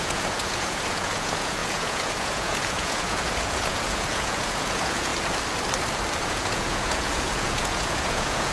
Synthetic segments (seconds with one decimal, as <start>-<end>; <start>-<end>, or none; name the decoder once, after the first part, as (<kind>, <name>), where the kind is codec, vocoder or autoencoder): 0.0-5.1 (vocoder, Vocos); 6.3-8.5